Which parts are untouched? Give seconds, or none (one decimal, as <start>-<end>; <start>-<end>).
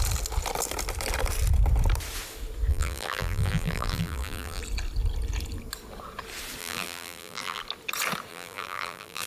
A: 0.0-2.7; 4.6-6.6; 7.6-8.3